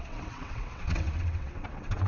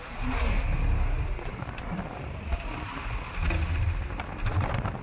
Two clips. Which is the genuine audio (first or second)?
second